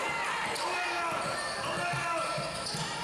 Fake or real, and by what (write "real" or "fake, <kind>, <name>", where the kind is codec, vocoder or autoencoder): real